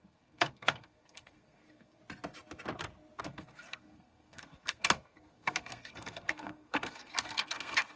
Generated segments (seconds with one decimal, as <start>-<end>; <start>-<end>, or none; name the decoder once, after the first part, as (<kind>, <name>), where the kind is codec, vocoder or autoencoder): 0.0-2.0 (codec, SNAC); 3.2-8.0